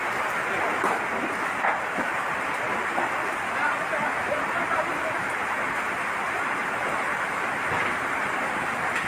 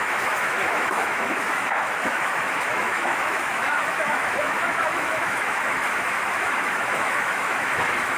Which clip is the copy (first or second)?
second